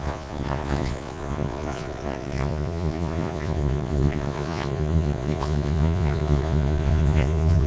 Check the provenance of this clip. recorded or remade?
remade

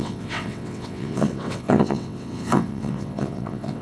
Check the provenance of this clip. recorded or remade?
remade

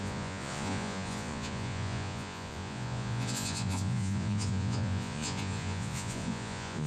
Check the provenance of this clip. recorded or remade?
remade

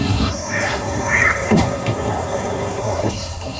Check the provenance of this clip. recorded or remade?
remade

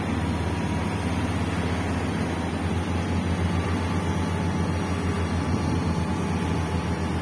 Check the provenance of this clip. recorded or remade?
recorded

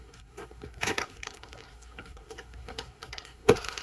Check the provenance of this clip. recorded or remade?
remade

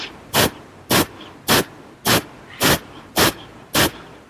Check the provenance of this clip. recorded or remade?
recorded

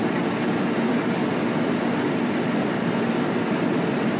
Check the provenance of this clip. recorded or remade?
recorded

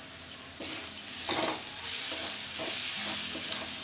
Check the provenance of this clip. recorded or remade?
recorded